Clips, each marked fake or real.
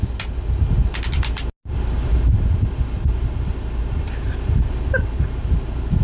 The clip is real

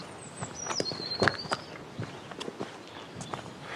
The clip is real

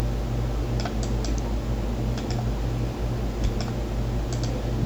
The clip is real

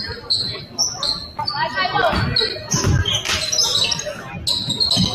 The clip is real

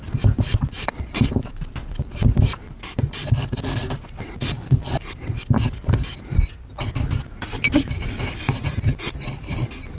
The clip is real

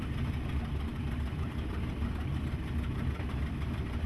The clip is fake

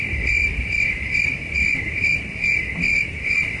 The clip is fake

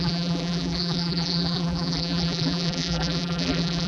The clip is fake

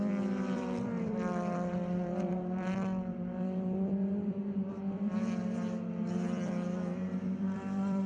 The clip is fake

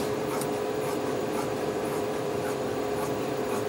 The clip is fake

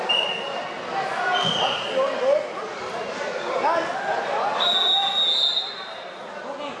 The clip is real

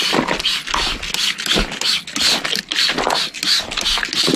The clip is real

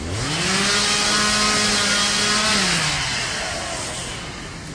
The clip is real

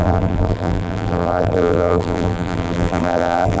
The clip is fake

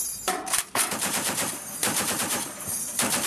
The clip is fake